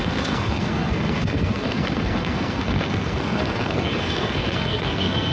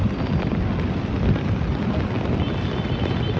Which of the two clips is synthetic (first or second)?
first